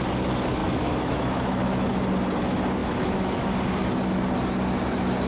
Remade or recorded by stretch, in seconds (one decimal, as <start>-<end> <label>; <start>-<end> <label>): 0.0-0.6 recorded; 0.6-1.9 remade; 1.9-2.8 recorded; 2.8-3.5 remade; 3.5-5.3 recorded